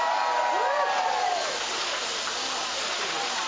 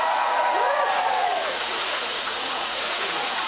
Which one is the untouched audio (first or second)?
first